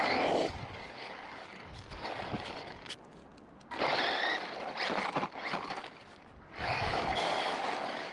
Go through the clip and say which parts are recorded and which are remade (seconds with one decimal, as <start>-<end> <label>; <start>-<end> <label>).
0.0-3.2 remade; 3.2-5.7 recorded; 5.7-8.1 remade